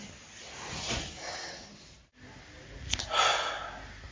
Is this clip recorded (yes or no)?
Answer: yes